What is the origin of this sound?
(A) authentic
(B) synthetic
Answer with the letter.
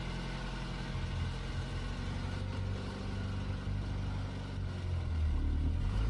A